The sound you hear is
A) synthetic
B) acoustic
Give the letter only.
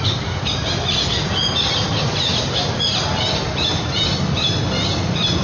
B